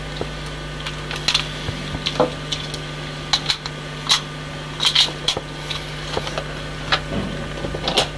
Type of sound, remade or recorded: recorded